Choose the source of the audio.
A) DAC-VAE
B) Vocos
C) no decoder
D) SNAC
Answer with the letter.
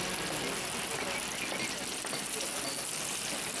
C